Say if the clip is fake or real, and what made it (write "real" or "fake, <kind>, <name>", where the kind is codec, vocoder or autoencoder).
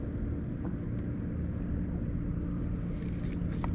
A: real